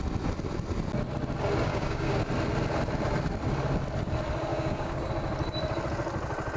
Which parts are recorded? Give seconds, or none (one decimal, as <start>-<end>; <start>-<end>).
0.0-1.7; 2.2-4.5; 5.1-6.6